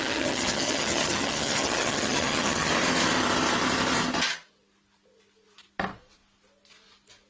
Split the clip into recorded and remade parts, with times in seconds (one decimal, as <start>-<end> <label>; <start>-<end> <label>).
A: 0.0-2.7 remade; 2.7-7.3 recorded